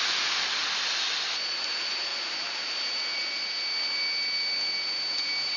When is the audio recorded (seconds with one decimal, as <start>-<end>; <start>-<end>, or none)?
0.0-5.6